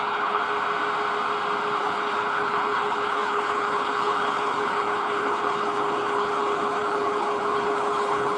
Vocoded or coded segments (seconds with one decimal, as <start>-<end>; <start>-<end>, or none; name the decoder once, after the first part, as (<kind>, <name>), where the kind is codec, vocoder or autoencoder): 0.0-0.4 (codec, HILCodec); 1.8-8.4